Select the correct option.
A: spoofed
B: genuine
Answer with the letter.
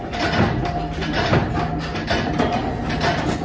B